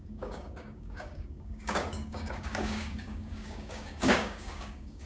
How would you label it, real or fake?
fake